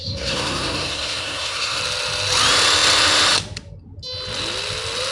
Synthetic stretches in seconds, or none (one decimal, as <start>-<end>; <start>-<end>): 0.0-1.8